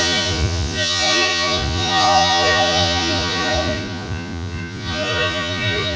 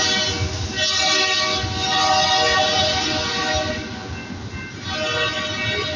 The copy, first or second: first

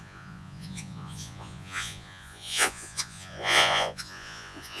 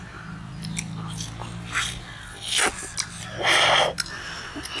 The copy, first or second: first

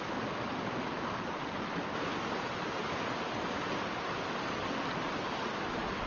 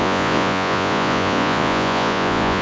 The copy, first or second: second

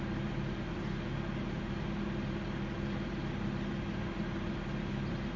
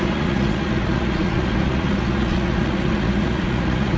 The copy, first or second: second